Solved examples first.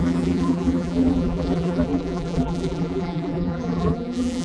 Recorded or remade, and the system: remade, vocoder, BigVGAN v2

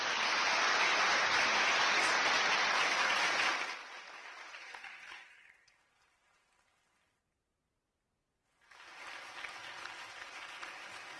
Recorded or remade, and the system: recorded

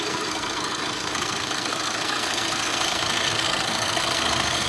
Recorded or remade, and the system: remade, codec, SNAC